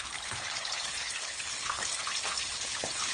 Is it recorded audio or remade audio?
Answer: remade